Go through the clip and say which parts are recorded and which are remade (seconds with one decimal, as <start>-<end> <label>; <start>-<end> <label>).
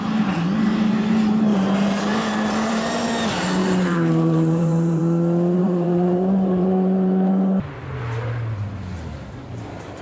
0.0-1.5 recorded; 1.5-3.1 remade; 3.1-3.6 recorded; 3.6-5.0 remade; 5.0-5.6 recorded; 5.6-7.3 remade; 7.3-10.0 recorded